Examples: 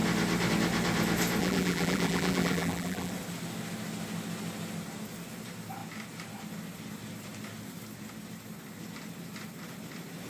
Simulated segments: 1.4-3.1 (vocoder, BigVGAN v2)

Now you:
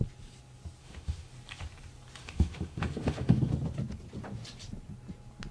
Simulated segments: 0.8-1.3 (autoencoder, DAC-VAE); 2.2-3.5

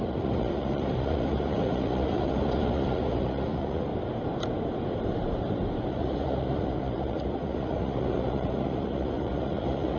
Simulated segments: 0.0-3.9 (vocoder, Vocos); 5.9-10.0

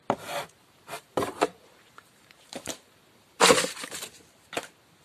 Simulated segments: 0.6-3.6 (vocoder, BigVGAN v2)